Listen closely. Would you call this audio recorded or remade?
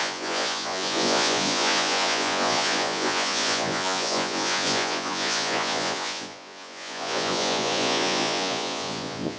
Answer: remade